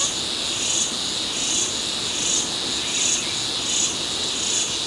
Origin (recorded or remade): recorded